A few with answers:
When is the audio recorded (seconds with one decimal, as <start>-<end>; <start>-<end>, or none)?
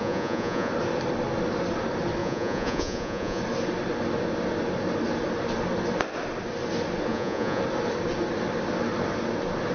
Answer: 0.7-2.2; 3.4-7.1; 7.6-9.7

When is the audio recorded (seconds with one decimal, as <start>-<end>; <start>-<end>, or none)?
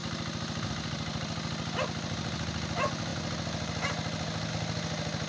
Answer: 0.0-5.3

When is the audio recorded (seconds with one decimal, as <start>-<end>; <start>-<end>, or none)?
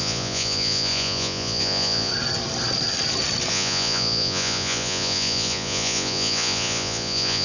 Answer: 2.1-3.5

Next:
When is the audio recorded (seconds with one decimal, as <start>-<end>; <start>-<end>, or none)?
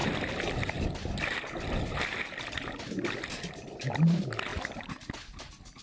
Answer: 0.0-5.8